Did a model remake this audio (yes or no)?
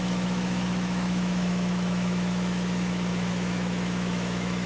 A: yes